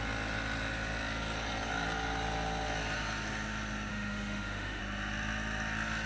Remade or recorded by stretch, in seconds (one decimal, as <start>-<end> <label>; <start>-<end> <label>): 0.0-3.9 recorded; 3.9-4.8 remade; 4.8-6.1 recorded